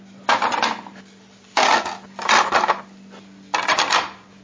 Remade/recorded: recorded